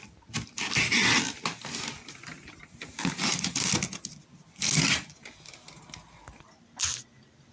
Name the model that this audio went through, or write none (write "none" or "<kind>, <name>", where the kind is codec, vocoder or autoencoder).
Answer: none